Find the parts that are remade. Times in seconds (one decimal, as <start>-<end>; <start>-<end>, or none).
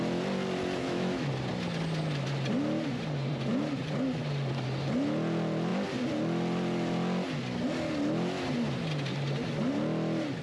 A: 0.8-1.3